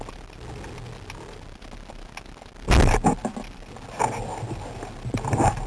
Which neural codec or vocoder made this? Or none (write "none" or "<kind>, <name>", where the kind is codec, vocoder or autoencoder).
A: none